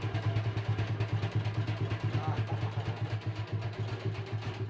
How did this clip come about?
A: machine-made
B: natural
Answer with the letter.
B